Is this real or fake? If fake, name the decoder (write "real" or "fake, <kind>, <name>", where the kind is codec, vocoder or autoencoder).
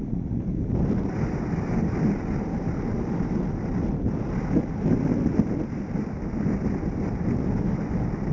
real